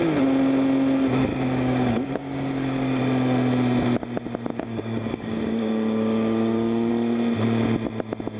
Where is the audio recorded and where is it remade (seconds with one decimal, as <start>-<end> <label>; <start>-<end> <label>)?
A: 0.0-1.3 recorded; 1.3-3.0 remade; 3.0-4.5 recorded; 4.5-6.9 remade; 6.9-8.4 recorded